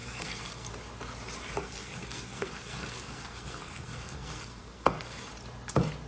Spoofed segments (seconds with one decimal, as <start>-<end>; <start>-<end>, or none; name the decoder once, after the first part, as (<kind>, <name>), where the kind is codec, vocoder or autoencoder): 0.0-0.7 (codec, SNAC); 1.6-5.3